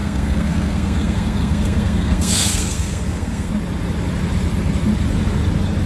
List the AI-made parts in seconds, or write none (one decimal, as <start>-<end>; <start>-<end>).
0.0-3.5